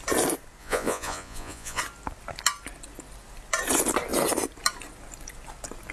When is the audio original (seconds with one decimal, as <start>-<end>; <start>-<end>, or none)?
0.0-0.6; 1.8-5.9